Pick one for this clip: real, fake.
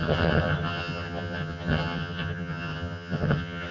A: fake